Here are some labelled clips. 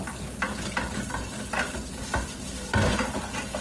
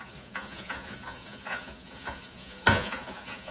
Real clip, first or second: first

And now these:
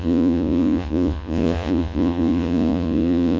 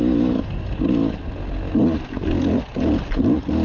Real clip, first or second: second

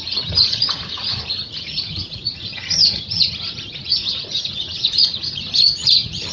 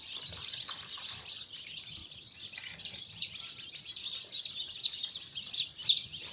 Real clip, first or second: second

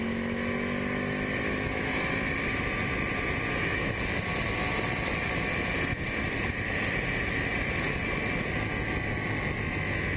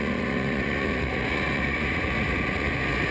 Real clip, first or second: first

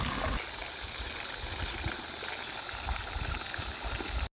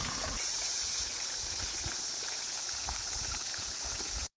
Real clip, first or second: first